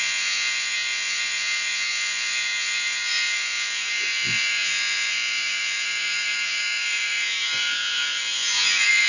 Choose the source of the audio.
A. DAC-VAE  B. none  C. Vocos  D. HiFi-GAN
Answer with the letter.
C